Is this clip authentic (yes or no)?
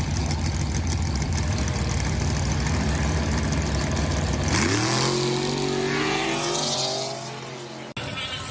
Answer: yes